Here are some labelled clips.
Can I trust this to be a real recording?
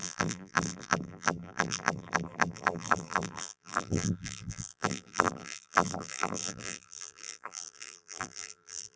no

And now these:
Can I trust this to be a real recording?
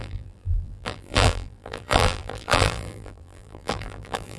no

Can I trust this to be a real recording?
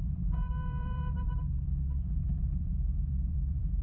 no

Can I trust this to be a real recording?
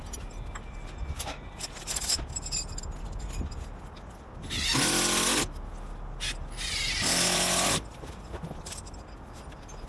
yes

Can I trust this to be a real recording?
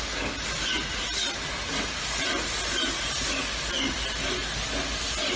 yes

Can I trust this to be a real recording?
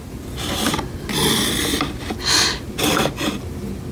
yes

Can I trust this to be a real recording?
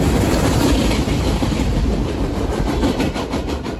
no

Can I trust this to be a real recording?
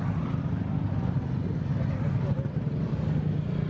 yes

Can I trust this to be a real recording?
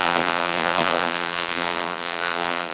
no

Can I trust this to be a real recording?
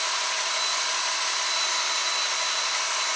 yes